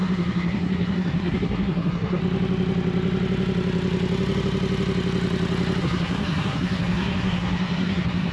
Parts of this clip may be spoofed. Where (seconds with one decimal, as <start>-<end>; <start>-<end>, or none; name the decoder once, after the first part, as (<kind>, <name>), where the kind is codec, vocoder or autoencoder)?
0.0-2.2 (codec, SNAC); 5.8-8.3